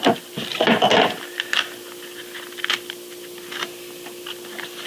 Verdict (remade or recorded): recorded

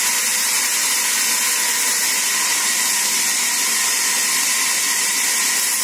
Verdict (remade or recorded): recorded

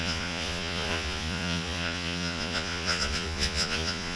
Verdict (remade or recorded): remade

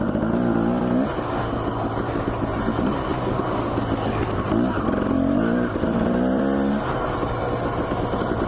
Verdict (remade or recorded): recorded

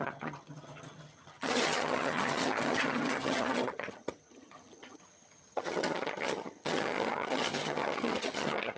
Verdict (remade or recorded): remade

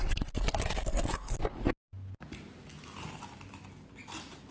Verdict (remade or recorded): recorded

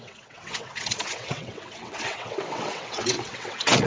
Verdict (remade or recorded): remade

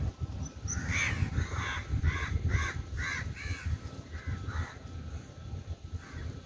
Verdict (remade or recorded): remade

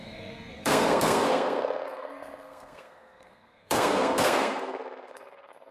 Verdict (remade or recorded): remade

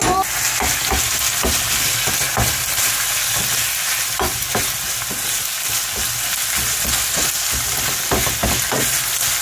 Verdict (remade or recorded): recorded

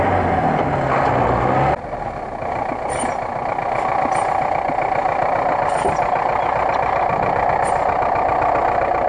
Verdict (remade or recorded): recorded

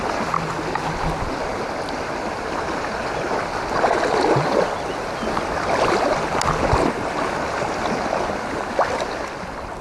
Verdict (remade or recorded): recorded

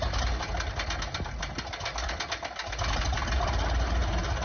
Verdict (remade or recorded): recorded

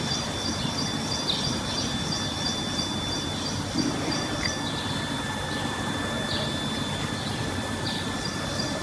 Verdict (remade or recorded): recorded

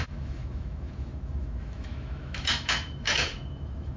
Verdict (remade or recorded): remade